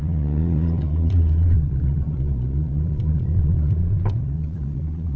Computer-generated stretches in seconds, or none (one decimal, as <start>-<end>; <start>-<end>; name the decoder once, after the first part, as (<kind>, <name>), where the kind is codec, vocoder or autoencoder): 0.0-5.2 (vocoder, Vocos)